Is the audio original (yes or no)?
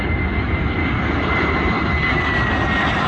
yes